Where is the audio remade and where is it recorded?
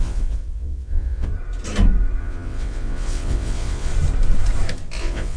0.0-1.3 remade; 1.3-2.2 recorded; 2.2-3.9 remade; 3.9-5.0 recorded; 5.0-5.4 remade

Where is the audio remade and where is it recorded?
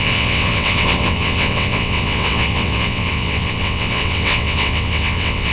0.0-5.5 remade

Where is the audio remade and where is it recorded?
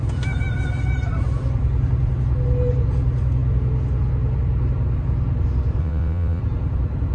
0.0-5.8 recorded; 5.8-6.4 remade; 6.4-7.1 recorded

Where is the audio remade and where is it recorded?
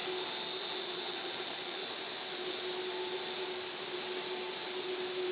0.0-0.8 recorded; 0.8-1.8 remade; 1.8-5.3 recorded